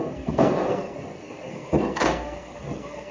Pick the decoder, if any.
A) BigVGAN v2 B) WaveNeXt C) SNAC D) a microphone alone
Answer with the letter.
C